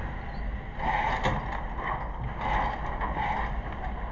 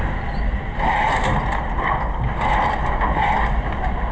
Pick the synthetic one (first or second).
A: second